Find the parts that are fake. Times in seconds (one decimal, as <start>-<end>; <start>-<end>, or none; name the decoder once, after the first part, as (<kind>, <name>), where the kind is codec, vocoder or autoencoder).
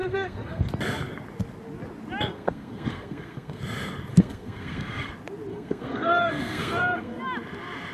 0.0-0.7 (codec, SNAC); 2.3-3.6; 4.1-5.1; 5.5-7.2